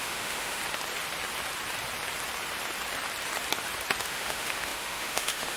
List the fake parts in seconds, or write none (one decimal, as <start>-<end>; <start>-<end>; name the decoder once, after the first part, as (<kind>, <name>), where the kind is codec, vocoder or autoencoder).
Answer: 0.0-0.6 (autoencoder, DAC-VAE); 4.0-5.6